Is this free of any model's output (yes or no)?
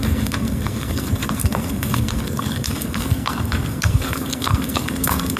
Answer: no